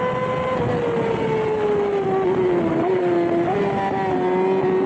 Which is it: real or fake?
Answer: real